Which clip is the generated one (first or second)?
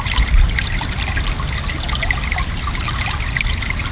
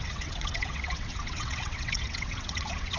second